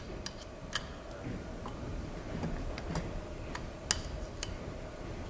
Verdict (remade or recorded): recorded